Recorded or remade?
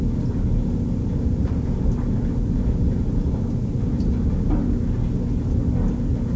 recorded